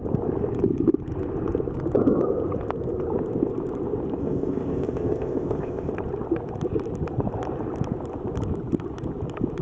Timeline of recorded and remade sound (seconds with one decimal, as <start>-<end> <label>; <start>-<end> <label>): 0.0-4.2 recorded; 4.2-5.9 remade; 5.9-9.6 recorded